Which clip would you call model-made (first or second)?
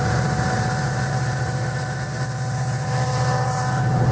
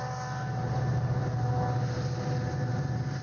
first